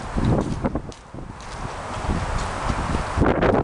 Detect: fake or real real